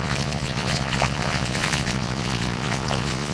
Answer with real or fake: fake